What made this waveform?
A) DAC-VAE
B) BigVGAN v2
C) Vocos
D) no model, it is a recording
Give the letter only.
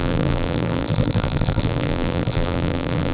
B